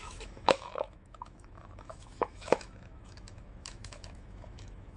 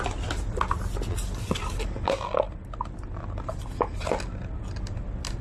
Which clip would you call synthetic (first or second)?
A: first